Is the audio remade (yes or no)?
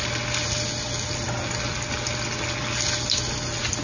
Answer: no